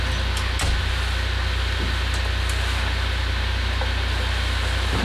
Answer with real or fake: real